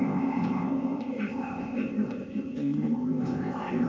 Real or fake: fake